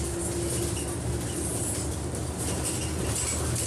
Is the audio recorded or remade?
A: recorded